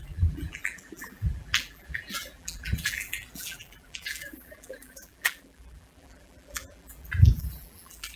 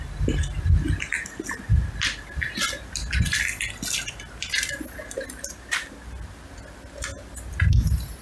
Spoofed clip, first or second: first